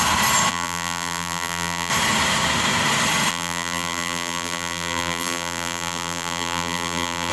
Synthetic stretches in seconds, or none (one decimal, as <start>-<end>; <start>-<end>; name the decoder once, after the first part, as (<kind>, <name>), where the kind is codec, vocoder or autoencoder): 0.5-1.9 (vocoder, BigVGAN v2); 3.3-7.3